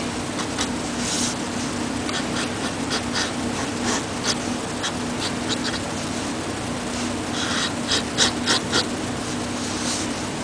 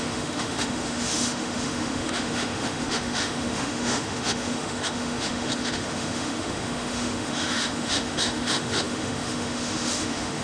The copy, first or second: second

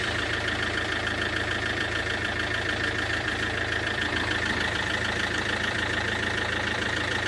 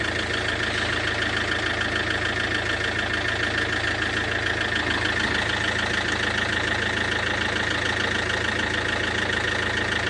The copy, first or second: first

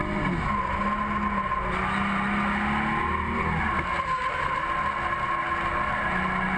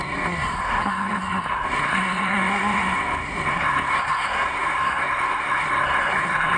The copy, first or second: second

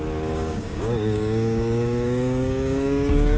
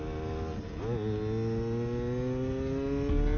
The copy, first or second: first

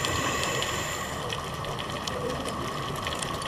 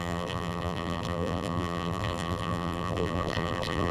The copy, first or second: second